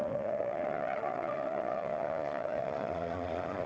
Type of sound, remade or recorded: remade